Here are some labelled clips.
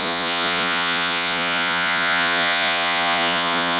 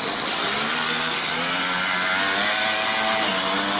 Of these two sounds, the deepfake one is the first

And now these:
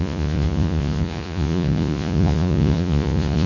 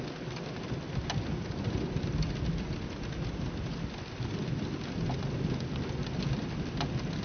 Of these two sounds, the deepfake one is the first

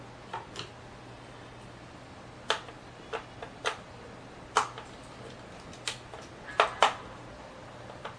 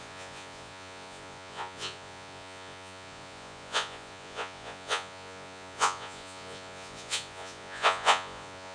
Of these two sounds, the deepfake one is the second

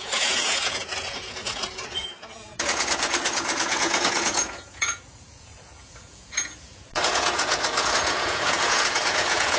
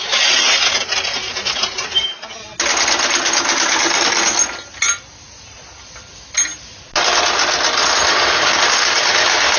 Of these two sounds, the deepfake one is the first